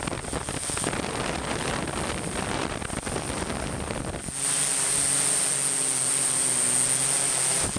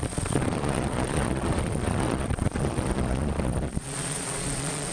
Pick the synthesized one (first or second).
second